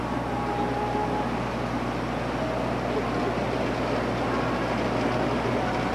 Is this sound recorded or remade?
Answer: recorded